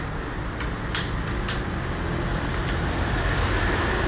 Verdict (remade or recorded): recorded